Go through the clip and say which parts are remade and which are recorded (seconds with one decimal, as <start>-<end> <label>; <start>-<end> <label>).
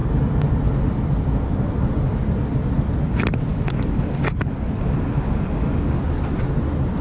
0.0-3.5 recorded; 3.5-6.0 remade; 6.0-7.0 recorded